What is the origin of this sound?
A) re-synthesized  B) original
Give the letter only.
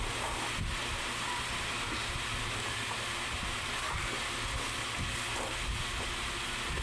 B